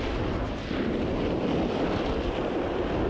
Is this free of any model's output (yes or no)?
yes